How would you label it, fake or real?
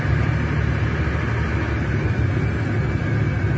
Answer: real